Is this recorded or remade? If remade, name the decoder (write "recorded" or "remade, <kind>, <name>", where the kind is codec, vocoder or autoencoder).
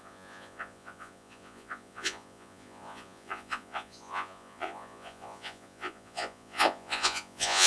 remade, vocoder, Vocos